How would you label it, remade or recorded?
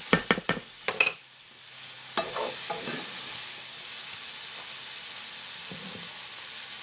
recorded